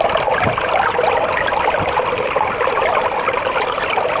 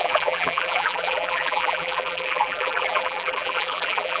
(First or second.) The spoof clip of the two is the second